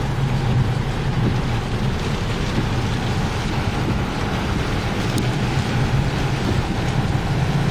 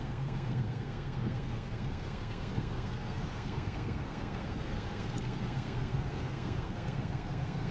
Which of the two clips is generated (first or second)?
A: second